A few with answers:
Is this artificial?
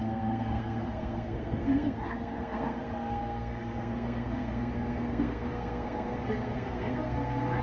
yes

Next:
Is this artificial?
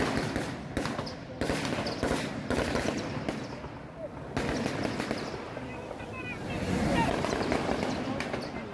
no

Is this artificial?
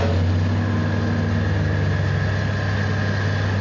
no